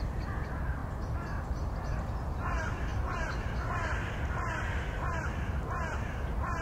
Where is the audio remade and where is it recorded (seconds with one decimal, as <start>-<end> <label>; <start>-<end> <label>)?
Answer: 0.0-6.6 recorded